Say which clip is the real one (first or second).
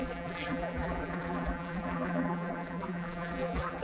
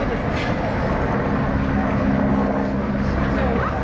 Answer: second